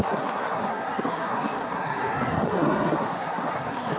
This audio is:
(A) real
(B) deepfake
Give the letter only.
B